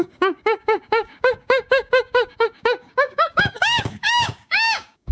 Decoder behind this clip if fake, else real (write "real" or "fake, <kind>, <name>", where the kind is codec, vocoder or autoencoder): fake, codec, DAC